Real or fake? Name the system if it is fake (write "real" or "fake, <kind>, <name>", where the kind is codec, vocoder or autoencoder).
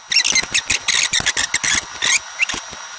real